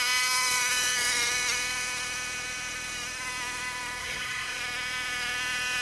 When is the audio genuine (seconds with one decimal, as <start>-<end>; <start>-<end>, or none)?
0.0-4.0; 4.6-5.8